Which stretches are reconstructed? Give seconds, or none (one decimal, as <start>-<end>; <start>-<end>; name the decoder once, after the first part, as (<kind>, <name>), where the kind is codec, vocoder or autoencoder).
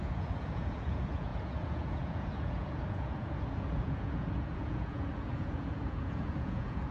0.0-6.9 (vocoder, Vocos)